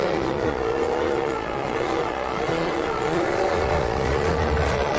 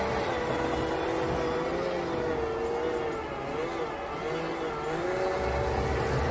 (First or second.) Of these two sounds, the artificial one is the first